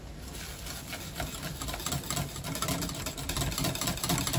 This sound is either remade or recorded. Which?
recorded